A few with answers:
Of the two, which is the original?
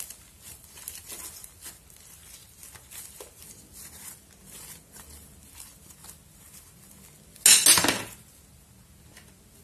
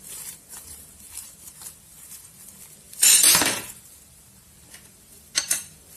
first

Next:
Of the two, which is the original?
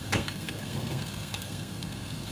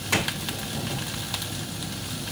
second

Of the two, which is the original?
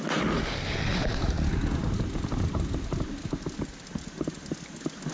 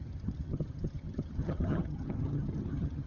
first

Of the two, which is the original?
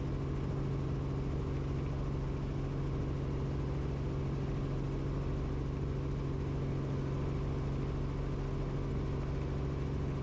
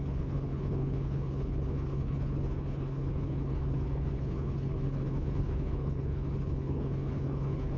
first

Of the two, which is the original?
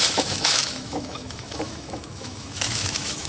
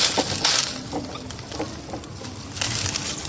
second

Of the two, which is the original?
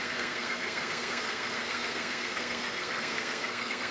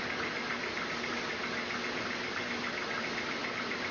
second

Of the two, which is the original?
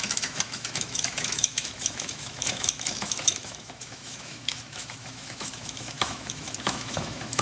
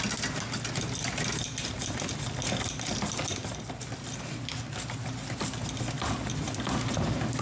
second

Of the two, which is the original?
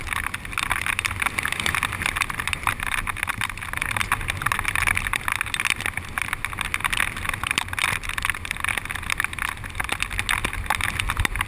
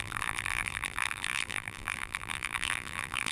first